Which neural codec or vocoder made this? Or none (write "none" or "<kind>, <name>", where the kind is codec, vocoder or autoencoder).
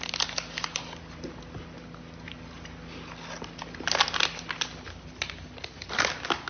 none